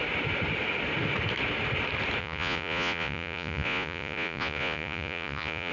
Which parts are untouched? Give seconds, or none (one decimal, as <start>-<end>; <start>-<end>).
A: 0.0-2.2